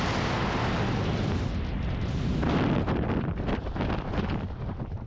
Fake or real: real